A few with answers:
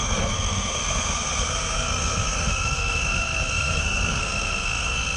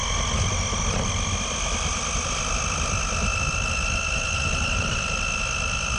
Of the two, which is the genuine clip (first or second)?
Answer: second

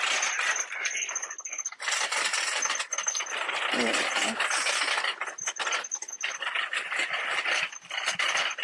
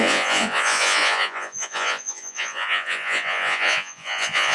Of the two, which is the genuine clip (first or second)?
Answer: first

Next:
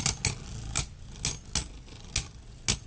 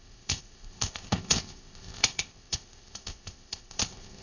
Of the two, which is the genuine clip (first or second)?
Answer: first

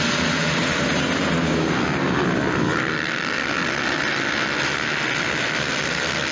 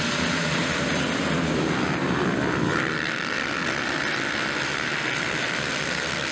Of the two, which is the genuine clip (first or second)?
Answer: first